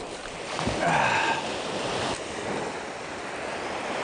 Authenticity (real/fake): real